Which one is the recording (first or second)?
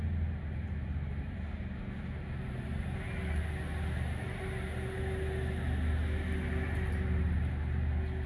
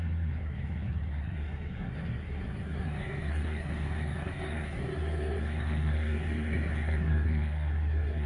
first